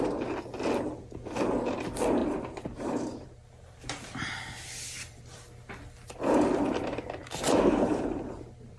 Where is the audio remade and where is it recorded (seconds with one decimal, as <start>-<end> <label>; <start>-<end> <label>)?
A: 0.0-2.2 recorded; 2.2-4.4 remade; 4.4-7.2 recorded; 7.2-8.8 remade